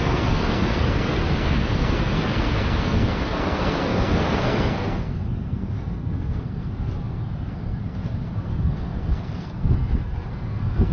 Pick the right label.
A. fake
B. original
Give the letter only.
A